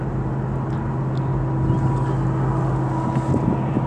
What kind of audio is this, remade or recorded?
recorded